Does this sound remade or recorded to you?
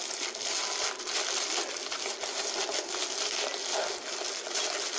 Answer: recorded